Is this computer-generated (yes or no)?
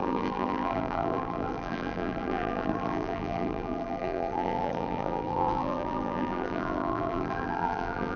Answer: yes